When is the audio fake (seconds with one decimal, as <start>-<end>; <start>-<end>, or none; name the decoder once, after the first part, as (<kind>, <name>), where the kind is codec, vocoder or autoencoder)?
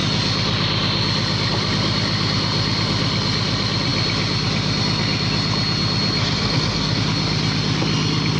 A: 6.2-7.0 (codec, SNAC)